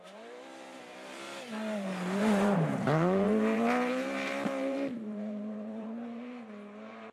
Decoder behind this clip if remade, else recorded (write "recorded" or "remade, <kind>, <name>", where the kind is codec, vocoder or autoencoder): remade, vocoder, BigVGAN v2